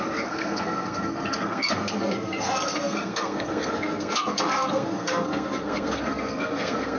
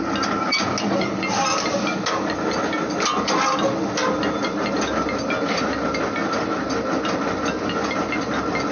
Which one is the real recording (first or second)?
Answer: second